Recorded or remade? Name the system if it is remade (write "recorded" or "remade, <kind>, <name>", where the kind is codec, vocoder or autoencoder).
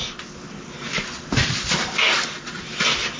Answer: recorded